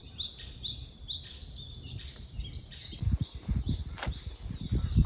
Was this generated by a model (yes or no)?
no